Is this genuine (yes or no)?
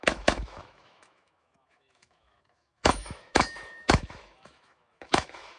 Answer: no